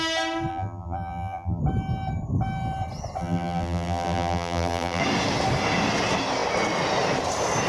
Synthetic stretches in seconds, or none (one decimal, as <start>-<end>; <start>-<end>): 0.5-1.6; 3.2-5.0